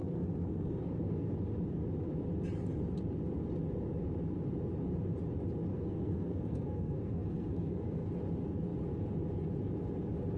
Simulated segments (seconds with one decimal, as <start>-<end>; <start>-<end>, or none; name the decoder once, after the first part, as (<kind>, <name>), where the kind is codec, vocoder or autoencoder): 0.0-1.3 (codec, SNAC); 5.7-8.1